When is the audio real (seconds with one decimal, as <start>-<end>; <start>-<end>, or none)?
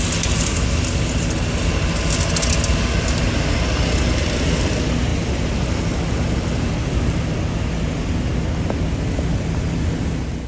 0.0-10.5